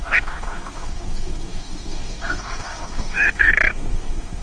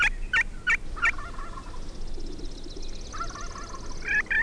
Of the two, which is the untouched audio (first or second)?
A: second